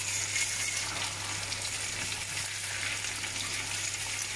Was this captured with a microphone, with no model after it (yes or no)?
yes